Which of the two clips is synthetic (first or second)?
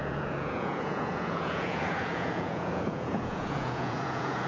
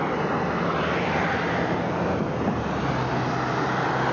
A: first